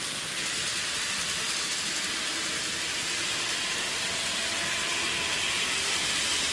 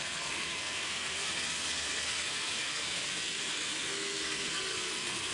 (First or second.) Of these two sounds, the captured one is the first